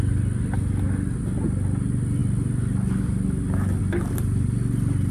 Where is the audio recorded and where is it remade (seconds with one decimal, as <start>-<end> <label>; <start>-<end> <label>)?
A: 0.0-5.1 recorded